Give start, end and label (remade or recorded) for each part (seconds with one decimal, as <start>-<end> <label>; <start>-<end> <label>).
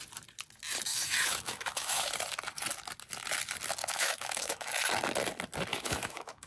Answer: 0.0-0.9 recorded; 0.9-2.1 remade; 2.1-3.8 recorded; 3.8-4.8 remade; 4.8-5.7 recorded; 5.7-6.5 remade